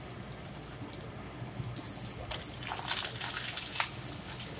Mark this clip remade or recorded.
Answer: recorded